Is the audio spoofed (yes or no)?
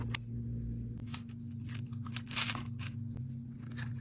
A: no